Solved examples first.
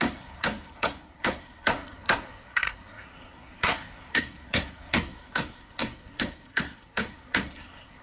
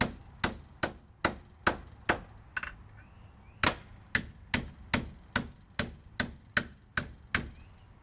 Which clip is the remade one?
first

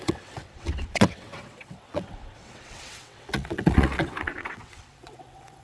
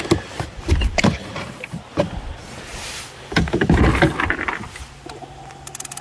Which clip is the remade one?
first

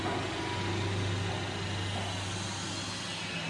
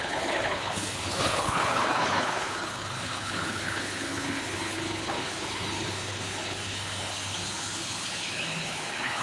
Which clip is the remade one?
second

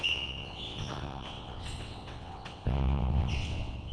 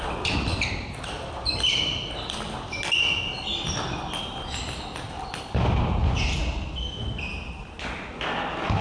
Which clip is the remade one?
first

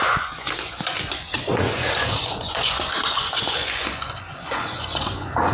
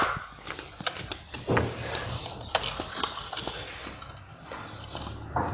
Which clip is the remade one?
first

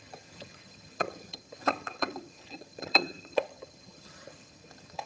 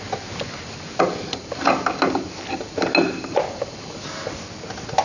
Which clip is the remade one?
first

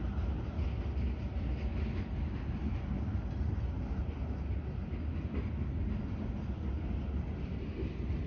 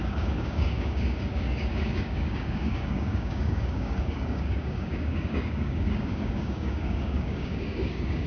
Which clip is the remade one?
second